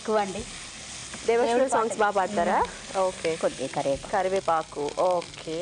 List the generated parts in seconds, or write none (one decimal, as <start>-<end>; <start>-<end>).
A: none